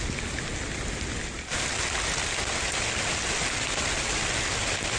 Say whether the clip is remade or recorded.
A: recorded